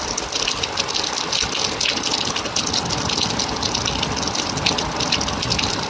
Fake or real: real